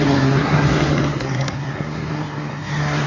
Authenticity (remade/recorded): remade